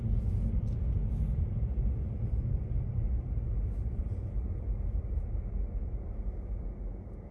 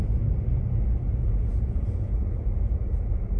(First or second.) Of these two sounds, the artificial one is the second